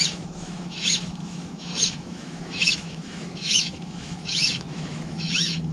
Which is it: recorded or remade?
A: remade